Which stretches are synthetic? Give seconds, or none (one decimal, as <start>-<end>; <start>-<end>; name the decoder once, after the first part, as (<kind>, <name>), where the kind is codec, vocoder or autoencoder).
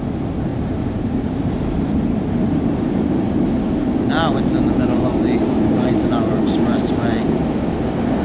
0.5-1.9 (vocoder, BigVGAN v2)